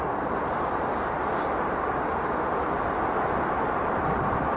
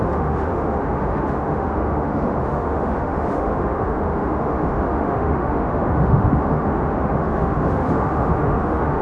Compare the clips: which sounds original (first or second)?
first